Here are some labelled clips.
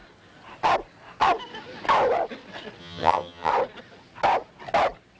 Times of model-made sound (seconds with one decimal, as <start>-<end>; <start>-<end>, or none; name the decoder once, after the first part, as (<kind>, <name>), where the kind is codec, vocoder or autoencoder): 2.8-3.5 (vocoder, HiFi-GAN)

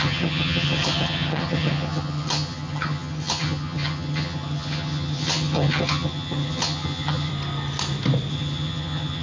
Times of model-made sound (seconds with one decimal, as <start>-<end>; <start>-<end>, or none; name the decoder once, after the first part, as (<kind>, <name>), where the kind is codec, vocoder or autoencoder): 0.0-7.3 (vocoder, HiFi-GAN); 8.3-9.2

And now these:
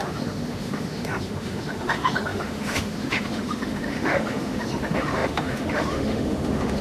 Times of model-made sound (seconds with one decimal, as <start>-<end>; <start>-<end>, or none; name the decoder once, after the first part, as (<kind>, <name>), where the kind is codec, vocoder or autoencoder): 0.0-6.8 (autoencoder, DAC-VAE)

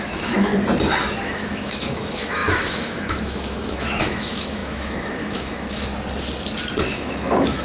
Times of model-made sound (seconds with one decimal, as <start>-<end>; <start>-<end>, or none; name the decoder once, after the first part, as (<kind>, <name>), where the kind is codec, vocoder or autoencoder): 0.0-0.5 (autoencoder, DAC-VAE); 1.2-5.9; 6.9-7.6

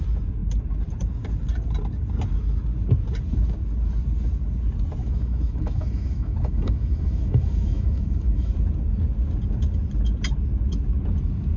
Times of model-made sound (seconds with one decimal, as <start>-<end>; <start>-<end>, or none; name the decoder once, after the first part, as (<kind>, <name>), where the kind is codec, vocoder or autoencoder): 5.0-8.5 (autoencoder, DAC-VAE)

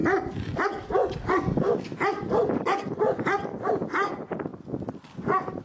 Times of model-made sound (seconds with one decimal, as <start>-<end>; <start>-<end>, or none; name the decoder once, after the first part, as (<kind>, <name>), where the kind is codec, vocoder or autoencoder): none